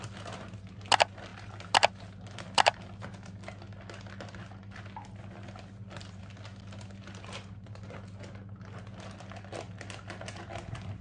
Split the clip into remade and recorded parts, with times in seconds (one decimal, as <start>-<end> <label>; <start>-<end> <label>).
0.0-11.0 recorded